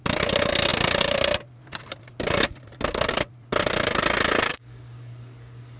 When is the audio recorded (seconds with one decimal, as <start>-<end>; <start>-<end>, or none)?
0.0-4.5